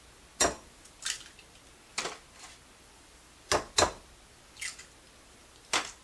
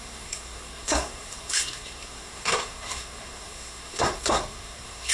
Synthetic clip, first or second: second